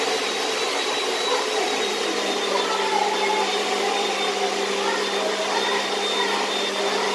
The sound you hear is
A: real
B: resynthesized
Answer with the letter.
A